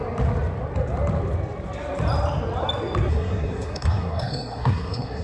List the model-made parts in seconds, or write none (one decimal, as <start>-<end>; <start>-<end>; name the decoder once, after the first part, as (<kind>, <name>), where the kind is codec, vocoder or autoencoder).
3.1-5.2 (codec, SNAC)